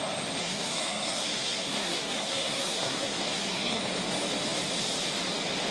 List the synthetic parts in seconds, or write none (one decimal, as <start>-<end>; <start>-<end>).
0.4-3.8